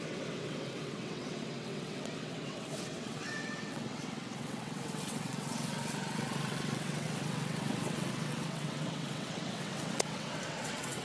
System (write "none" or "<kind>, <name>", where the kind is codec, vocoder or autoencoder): vocoder, WaveNeXt